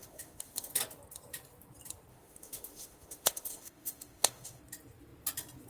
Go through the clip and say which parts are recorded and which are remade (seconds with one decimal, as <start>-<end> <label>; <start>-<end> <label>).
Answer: 0.0-0.7 remade; 0.7-2.1 recorded; 2.1-4.6 remade; 4.6-5.7 recorded

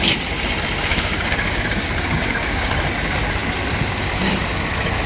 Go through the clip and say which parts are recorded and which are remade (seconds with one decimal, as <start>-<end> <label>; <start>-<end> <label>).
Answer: 0.0-0.9 recorded; 0.9-2.9 remade; 2.9-5.1 recorded